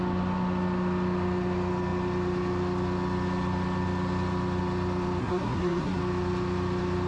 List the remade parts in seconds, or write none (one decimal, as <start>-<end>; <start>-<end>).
5.2-6.0